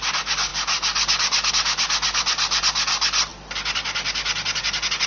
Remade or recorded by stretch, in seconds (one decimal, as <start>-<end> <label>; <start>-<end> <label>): 0.0-5.1 recorded